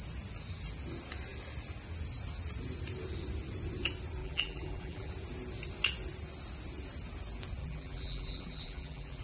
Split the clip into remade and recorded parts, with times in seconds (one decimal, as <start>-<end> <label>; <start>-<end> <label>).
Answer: 0.0-4.2 recorded; 4.2-5.1 remade; 5.1-7.6 recorded; 7.6-9.2 remade